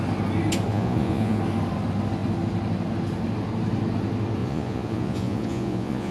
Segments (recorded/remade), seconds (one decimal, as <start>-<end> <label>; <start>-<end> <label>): 0.0-0.7 recorded; 0.7-1.4 remade; 1.4-4.4 recorded; 4.4-6.1 remade